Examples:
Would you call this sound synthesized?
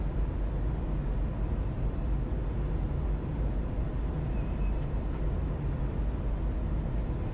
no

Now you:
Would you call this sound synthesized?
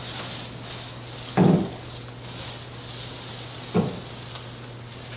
no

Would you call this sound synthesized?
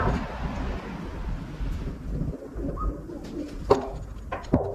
no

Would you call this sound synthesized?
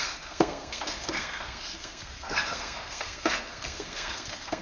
yes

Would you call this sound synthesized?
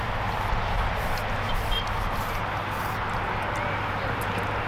no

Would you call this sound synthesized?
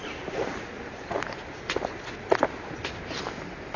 no